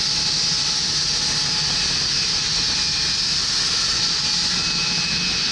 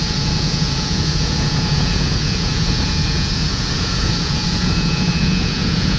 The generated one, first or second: second